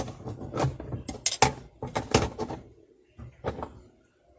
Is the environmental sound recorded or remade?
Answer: recorded